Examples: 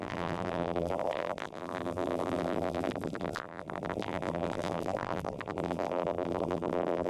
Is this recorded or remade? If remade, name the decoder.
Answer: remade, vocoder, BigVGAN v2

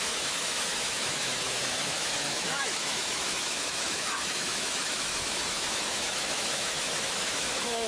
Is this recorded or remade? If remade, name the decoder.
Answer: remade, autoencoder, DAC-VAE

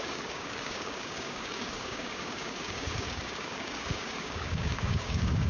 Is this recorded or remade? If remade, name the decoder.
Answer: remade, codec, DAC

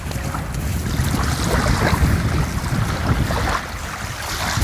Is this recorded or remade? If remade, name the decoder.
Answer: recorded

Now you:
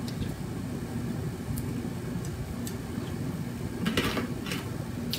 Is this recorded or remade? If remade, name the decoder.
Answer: recorded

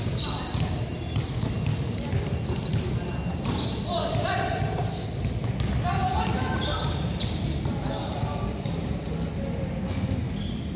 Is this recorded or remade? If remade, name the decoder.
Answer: recorded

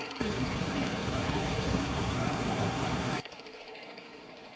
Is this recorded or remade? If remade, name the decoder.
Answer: remade, codec, SNAC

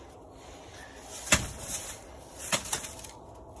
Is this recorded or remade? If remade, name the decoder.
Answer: recorded